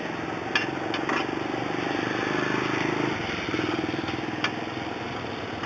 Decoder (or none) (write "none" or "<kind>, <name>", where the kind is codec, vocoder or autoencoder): none